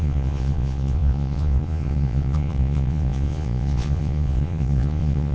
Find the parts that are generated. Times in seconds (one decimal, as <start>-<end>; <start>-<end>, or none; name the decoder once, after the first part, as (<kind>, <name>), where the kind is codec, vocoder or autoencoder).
0.0-5.3 (vocoder, Vocos)